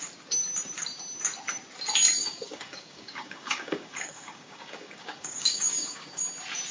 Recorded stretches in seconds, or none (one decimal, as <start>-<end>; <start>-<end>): 0.0-2.2; 6.2-6.7